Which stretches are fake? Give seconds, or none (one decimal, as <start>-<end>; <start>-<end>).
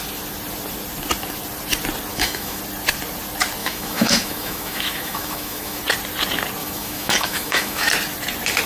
2.1-2.6; 3.6-5.8; 6.6-7.9